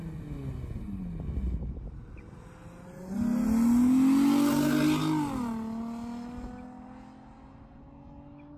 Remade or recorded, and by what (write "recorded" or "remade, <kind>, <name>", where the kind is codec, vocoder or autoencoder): recorded